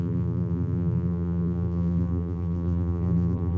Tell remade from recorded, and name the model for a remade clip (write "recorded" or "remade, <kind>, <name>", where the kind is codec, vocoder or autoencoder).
remade, vocoder, BigVGAN v2